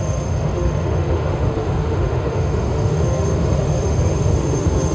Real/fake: fake